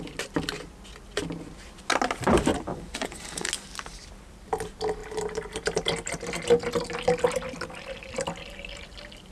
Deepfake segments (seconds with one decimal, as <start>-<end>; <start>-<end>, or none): 2.7-3.5